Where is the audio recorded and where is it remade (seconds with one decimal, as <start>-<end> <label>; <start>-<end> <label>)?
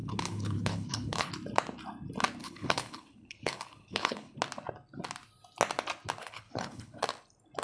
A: 0.0-1.3 remade; 1.3-2.4 recorded; 2.4-4.4 remade; 4.4-6.2 recorded; 6.2-7.0 remade; 7.0-7.6 recorded